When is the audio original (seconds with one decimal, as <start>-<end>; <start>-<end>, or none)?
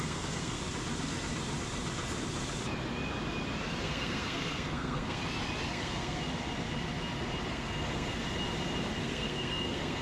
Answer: 0.6-3.8; 5.2-5.7; 6.2-7.5; 8.2-9.0